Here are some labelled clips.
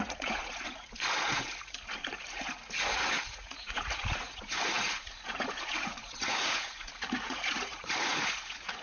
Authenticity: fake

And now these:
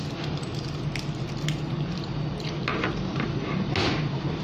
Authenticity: real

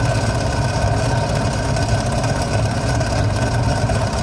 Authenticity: real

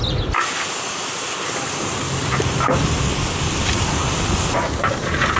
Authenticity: fake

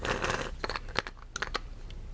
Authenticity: real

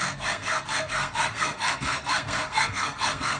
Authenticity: fake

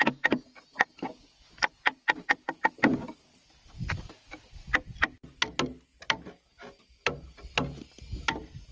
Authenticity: real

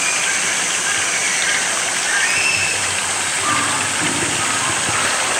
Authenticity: real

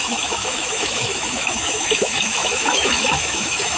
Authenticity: fake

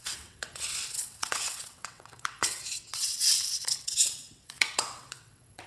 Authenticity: fake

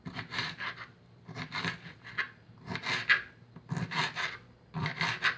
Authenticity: real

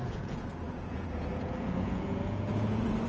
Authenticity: fake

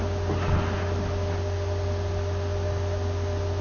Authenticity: real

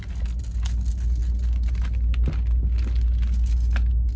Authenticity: real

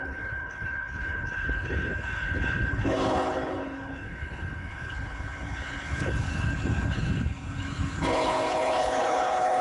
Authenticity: fake